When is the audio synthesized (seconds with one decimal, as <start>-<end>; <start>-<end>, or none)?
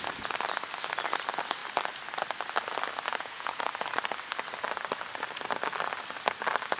3.1-3.7